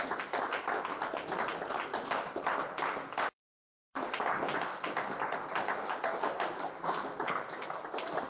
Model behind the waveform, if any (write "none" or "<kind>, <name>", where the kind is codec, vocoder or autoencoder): none